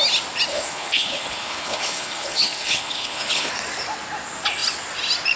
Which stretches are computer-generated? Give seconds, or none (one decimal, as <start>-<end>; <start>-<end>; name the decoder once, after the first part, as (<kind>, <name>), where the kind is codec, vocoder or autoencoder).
0.5-3.5 (codec, HILCodec)